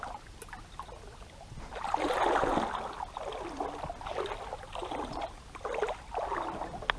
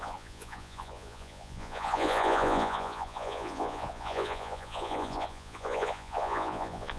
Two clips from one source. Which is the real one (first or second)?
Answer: first